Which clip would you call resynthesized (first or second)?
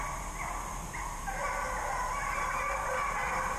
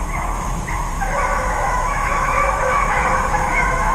second